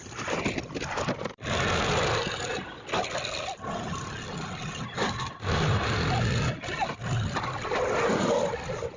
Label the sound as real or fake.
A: real